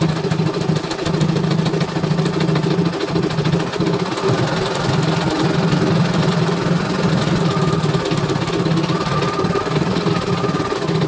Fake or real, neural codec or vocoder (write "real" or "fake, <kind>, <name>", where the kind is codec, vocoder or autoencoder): real